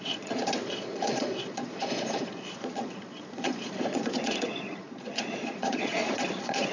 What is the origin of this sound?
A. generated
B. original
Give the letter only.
A